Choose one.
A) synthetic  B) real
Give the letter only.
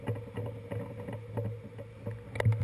B